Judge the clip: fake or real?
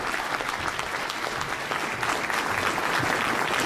real